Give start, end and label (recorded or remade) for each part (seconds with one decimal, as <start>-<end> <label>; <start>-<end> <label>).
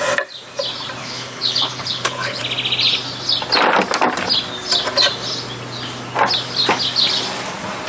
0.0-1.0 recorded; 1.0-2.4 remade; 2.4-7.9 recorded